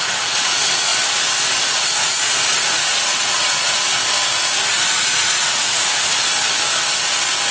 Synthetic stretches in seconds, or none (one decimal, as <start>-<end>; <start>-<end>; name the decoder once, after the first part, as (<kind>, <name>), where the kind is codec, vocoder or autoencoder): 0.0-0.9 (vocoder, Vocos); 1.6-4.0; 4.9-6.2